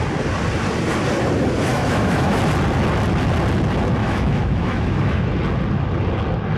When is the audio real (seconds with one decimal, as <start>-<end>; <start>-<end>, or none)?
0.0-1.7; 2.4-4.0; 5.3-6.6